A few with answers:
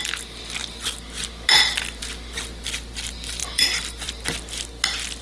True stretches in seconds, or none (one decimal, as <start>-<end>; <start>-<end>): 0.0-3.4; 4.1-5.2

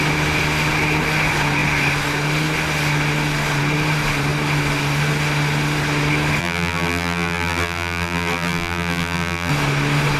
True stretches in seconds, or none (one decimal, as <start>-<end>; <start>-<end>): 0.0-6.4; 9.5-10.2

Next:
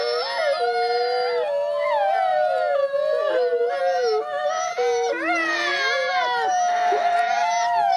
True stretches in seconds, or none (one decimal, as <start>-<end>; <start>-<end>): 0.0-8.0

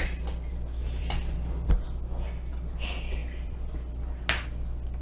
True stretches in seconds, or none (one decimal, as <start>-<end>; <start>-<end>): 0.0-0.8; 1.7-3.2; 3.7-5.0

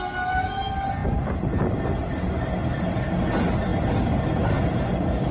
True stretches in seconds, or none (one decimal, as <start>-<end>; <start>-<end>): 0.0-5.3